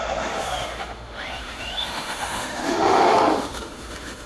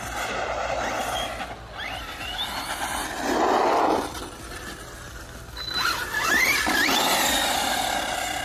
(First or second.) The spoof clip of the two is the first